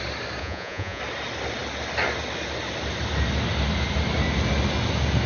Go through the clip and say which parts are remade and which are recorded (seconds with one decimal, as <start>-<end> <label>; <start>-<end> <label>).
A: 0.0-0.4 recorded; 0.4-1.0 remade; 1.0-5.3 recorded

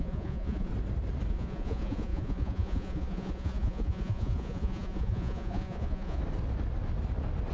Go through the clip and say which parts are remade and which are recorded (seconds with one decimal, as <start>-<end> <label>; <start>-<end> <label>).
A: 0.0-0.7 remade; 0.7-1.3 recorded; 1.3-6.2 remade; 6.2-7.5 recorded

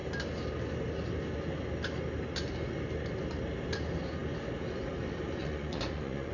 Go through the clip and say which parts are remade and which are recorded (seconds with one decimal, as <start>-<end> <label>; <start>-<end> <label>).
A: 0.0-5.4 recorded; 5.4-6.3 remade

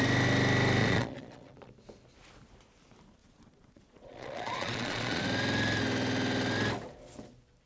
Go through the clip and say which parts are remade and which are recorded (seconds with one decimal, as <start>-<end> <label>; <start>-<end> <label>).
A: 0.0-0.8 recorded; 0.8-1.7 remade; 1.7-3.2 recorded; 3.2-5.2 remade; 5.2-7.7 recorded

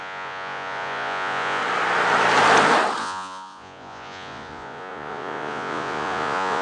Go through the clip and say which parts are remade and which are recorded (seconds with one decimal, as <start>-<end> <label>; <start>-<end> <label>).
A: 0.0-1.6 remade; 1.6-3.0 recorded; 3.0-6.6 remade

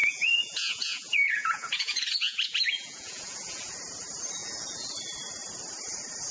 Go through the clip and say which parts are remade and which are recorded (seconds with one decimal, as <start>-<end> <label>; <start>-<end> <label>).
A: 0.0-3.8 remade; 3.8-4.4 recorded; 4.4-4.9 remade; 4.9-6.3 recorded

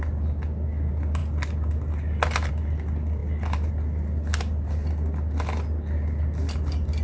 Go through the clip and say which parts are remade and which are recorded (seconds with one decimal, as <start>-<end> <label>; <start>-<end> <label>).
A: 0.0-7.0 recorded

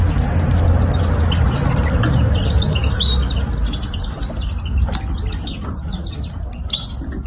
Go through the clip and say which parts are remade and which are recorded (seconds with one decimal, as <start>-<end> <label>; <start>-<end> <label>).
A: 0.0-7.3 recorded